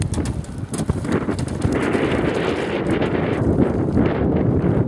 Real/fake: real